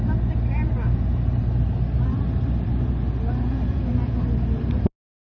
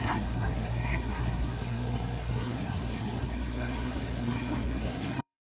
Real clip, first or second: first